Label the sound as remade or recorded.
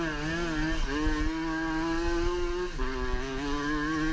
recorded